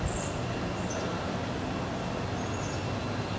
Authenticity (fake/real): real